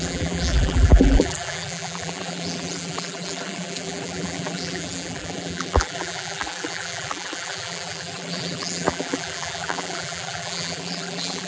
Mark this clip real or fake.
fake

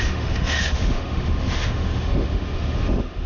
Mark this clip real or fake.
fake